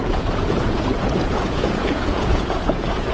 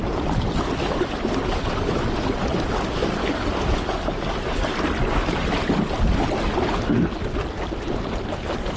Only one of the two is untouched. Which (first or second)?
second